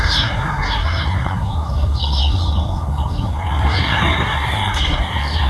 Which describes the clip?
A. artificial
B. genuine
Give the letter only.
A